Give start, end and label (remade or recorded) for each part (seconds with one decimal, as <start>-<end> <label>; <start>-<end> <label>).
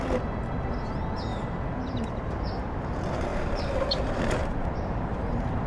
0.0-1.3 recorded; 1.3-2.1 remade; 2.1-3.3 recorded; 3.3-5.7 remade